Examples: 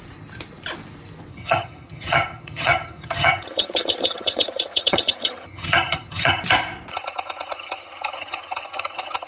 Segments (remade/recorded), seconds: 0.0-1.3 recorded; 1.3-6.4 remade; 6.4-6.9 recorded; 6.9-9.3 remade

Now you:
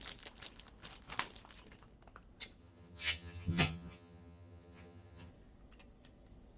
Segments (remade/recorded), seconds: 0.0-2.6 recorded; 2.6-5.3 remade; 5.3-6.6 recorded

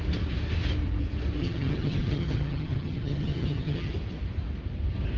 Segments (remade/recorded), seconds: 0.0-1.4 recorded; 1.4-3.9 remade; 3.9-5.2 recorded

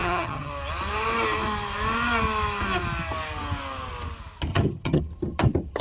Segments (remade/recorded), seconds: 0.0-0.5 remade; 0.5-4.5 recorded; 4.5-5.0 remade; 5.0-5.8 recorded

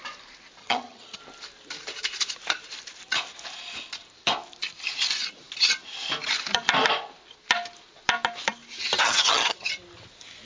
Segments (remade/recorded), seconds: 0.0-0.6 recorded; 0.6-1.2 remade; 1.2-9.0 recorded; 9.0-9.7 remade; 9.7-10.5 recorded